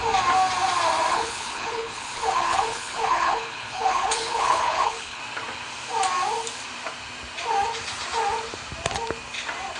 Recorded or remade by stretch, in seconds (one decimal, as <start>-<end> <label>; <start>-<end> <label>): 0.0-1.1 recorded; 1.1-5.2 remade; 5.2-9.8 recorded